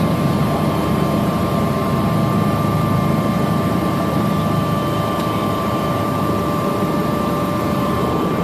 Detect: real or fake fake